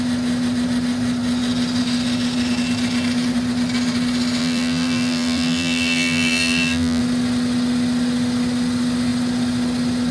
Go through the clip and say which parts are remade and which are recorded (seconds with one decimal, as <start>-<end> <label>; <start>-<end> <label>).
0.0-4.4 recorded; 4.4-7.0 remade; 7.0-10.1 recorded

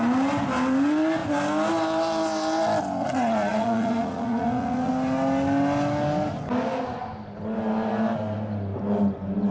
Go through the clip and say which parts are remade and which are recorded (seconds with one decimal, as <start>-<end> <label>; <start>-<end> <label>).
0.0-3.5 recorded; 3.5-4.9 remade; 4.9-9.5 recorded

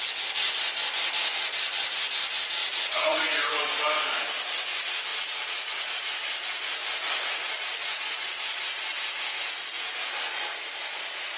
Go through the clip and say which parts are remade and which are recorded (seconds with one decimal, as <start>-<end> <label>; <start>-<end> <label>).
0.0-2.6 recorded; 2.6-3.6 remade; 3.6-5.1 recorded; 5.1-5.9 remade; 5.9-6.8 recorded; 6.8-8.2 remade; 8.2-10.5 recorded; 10.5-11.4 remade

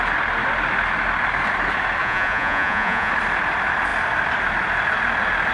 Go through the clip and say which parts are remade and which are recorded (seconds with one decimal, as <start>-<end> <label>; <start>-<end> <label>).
0.0-2.0 recorded; 2.0-3.1 remade; 3.1-5.5 recorded

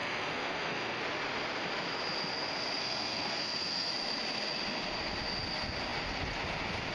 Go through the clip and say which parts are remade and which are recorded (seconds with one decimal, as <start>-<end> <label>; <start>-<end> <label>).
0.0-1.0 remade; 1.0-2.8 recorded; 2.8-3.9 remade; 3.9-6.9 recorded

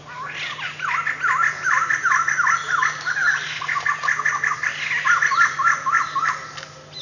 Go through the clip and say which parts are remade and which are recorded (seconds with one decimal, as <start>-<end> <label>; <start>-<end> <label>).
0.0-7.0 recorded

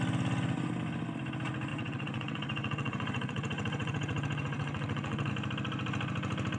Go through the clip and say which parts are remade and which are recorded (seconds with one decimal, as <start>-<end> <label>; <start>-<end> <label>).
0.0-1.7 recorded; 1.7-5.3 remade; 5.3-6.6 recorded